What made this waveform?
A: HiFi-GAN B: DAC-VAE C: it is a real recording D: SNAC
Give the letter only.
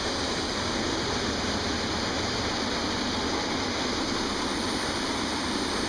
C